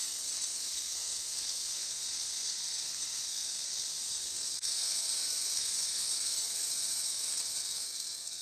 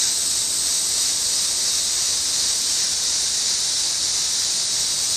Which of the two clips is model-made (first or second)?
first